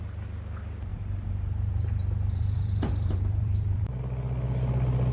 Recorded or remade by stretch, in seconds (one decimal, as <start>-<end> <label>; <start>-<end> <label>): 0.0-0.9 recorded; 0.9-4.0 remade; 4.0-5.1 recorded